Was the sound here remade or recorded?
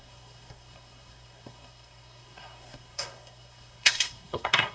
remade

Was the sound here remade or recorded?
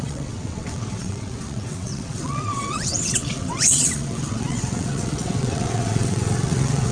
remade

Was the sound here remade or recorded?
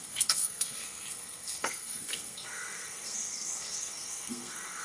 remade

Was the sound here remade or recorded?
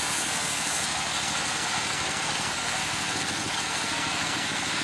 remade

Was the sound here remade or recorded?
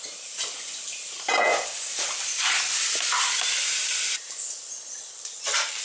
recorded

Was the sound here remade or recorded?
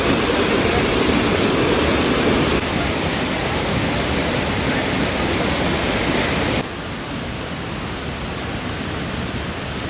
recorded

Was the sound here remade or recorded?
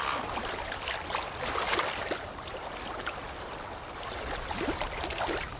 recorded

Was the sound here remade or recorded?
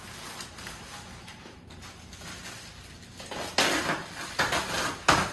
recorded